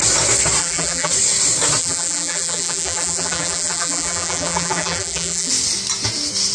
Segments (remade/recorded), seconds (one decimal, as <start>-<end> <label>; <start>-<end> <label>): 0.0-0.6 recorded; 0.6-1.1 remade; 1.1-1.8 recorded; 1.8-5.5 remade; 5.5-6.5 recorded